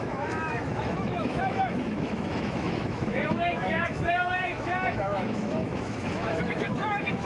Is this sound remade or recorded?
remade